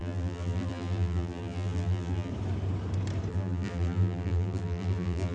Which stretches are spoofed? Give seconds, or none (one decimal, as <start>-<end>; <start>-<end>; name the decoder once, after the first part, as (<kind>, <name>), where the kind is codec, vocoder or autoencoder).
0.0-2.3 (vocoder, BigVGAN v2); 3.3-5.3